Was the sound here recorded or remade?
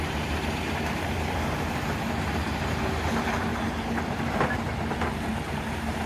remade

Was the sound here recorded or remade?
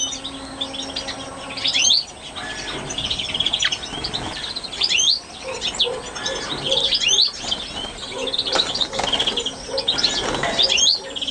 recorded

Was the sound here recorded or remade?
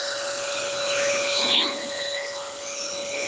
remade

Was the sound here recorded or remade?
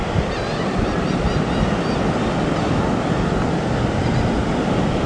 recorded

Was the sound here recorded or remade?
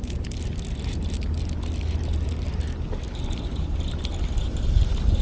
recorded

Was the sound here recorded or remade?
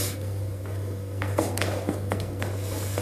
remade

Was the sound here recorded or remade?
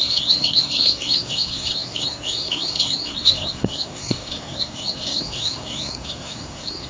remade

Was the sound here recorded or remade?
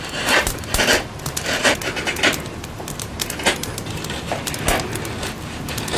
recorded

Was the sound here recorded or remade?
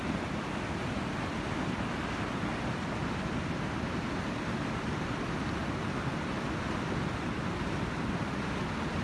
recorded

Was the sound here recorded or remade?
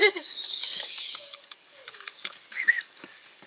remade